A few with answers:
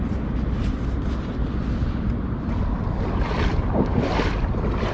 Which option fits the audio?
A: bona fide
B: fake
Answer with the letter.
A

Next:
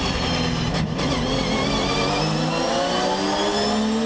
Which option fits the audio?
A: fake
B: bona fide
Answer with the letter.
B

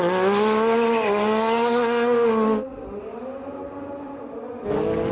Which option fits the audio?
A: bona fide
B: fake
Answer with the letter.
A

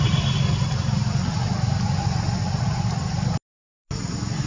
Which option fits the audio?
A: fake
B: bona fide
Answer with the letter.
B